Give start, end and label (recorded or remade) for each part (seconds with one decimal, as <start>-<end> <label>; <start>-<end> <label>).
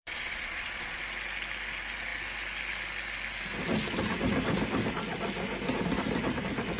0.0-1.0 remade; 1.0-6.8 recorded